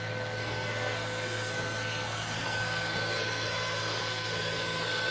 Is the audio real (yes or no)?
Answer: no